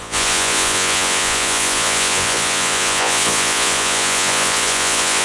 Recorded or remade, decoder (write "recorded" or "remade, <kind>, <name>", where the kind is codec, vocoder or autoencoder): remade, vocoder, Vocos